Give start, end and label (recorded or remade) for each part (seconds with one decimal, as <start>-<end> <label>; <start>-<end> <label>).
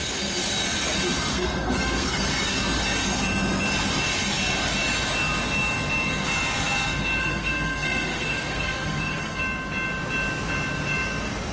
0.0-1.3 recorded; 1.3-2.3 remade; 2.3-7.2 recorded; 7.2-9.4 remade; 9.4-11.5 recorded